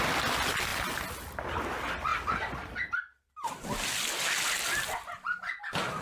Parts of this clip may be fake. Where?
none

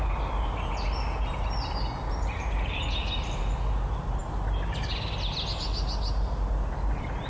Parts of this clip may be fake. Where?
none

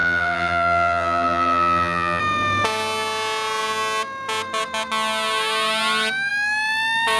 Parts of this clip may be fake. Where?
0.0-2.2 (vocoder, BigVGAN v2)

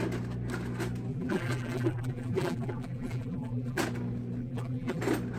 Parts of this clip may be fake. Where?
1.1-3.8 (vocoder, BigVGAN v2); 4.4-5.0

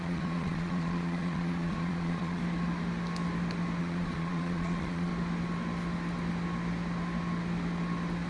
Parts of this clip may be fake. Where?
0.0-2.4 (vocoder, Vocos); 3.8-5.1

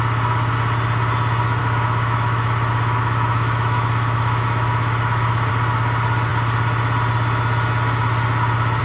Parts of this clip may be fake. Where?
1.6-5.5 (autoencoder, DAC-VAE)